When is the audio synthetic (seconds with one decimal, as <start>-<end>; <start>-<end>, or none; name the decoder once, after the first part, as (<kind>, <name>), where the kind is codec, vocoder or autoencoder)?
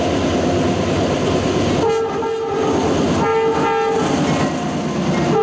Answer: none